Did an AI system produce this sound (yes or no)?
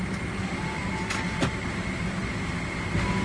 no